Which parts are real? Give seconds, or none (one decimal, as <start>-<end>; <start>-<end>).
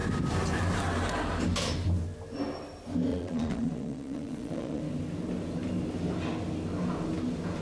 0.0-3.1; 4.8-7.6